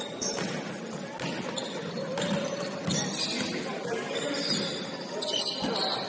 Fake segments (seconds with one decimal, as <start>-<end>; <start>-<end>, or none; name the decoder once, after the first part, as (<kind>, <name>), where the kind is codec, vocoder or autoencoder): none